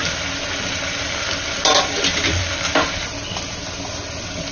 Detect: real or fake real